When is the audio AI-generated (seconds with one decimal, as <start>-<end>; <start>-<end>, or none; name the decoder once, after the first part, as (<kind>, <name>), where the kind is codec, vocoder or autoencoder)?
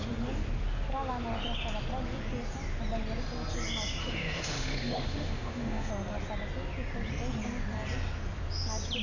4.0-5.9 (autoencoder, DAC-VAE)